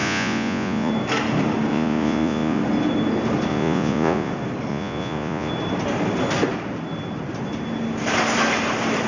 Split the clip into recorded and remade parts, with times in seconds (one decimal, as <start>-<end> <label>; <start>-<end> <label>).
0.0-0.9 remade; 0.9-1.7 recorded; 1.7-2.6 remade; 2.6-3.5 recorded; 3.5-4.3 remade; 4.3-4.7 recorded; 4.7-5.5 remade; 5.5-9.1 recorded